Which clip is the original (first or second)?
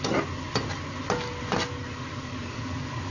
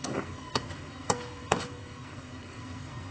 first